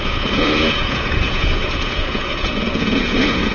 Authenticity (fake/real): fake